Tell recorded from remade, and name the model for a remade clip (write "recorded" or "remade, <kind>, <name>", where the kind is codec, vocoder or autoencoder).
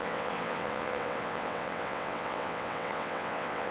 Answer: remade, vocoder, WaveNeXt